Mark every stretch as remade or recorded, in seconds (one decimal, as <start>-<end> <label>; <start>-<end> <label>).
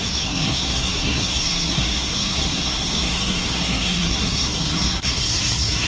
0.0-5.9 remade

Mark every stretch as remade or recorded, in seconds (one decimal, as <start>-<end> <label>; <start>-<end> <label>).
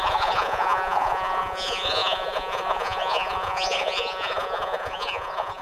0.0-5.6 remade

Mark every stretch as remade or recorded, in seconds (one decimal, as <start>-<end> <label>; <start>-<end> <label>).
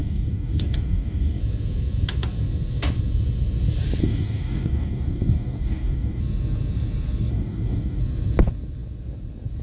0.0-1.4 remade; 1.4-4.0 recorded; 4.0-6.2 remade; 6.2-7.3 recorded; 7.3-8.0 remade; 8.0-9.6 recorded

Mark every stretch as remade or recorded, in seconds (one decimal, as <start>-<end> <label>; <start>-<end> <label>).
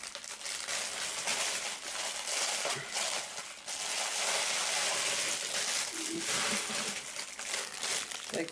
0.0-1.3 recorded; 1.3-3.6 remade; 3.6-8.5 recorded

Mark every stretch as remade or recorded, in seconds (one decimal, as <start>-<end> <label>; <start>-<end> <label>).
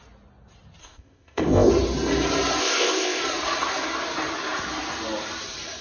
0.0-0.8 recorded; 0.8-1.7 remade; 1.7-2.6 recorded; 2.6-3.2 remade; 3.2-5.8 recorded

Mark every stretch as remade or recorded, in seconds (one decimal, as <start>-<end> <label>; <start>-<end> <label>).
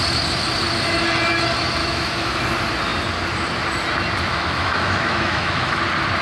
0.0-1.8 recorded; 1.8-2.4 remade; 2.4-4.3 recorded; 4.3-5.8 remade; 5.8-6.2 recorded